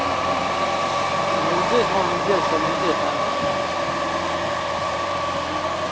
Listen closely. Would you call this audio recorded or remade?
remade